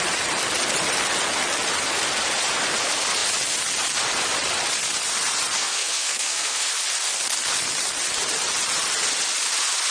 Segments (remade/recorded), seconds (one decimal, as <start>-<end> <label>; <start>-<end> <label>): 0.0-5.6 recorded; 5.6-6.7 remade; 6.7-9.9 recorded